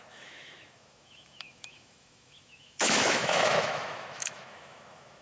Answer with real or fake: fake